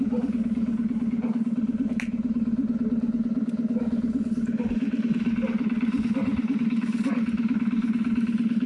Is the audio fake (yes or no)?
no